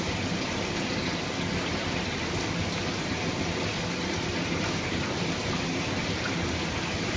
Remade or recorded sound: recorded